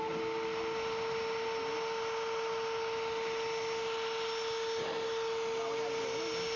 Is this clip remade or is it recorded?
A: recorded